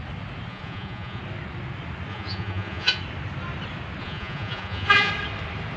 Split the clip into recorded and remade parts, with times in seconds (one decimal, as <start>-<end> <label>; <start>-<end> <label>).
0.0-0.5 recorded; 0.5-1.2 remade; 1.2-2.1 recorded; 2.1-3.0 remade; 3.0-4.0 recorded; 4.0-5.1 remade; 5.1-5.8 recorded